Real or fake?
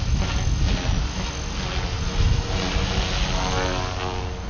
real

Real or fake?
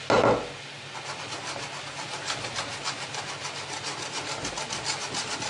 real